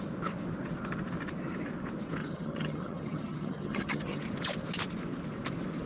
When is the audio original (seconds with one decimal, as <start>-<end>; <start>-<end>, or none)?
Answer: 0.0-2.2; 4.2-5.9